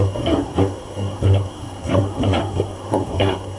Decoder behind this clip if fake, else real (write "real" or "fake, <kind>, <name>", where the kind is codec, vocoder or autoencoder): fake, codec, SNAC